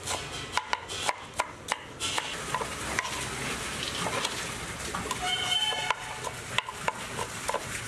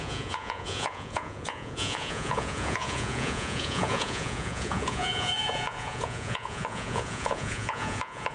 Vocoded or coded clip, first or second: second